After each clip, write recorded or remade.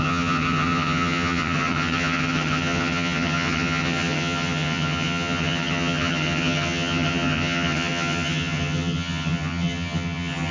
remade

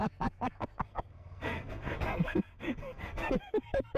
remade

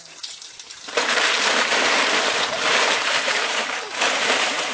remade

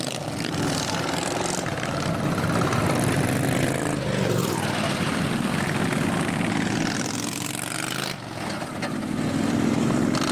recorded